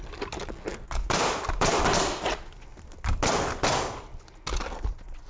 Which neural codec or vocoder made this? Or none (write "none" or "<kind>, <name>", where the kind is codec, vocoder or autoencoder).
none